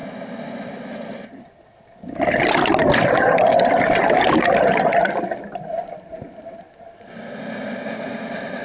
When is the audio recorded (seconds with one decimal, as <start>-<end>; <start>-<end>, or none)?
0.0-8.6